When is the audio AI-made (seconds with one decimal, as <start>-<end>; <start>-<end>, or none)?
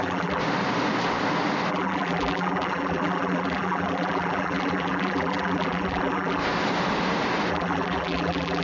0.0-0.4; 1.7-6.4; 7.5-8.6